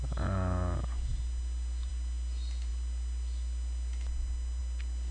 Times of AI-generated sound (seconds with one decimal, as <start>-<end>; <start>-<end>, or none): none